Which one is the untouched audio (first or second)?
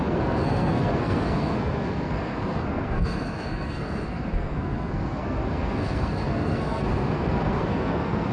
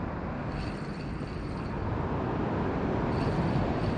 second